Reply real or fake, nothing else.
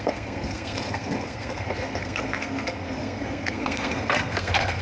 fake